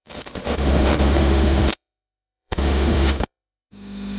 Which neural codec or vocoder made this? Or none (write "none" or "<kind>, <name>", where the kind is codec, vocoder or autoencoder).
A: autoencoder, DAC-VAE